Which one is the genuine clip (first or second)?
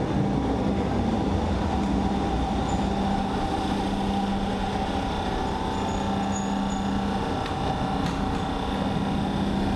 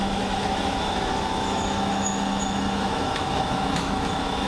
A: first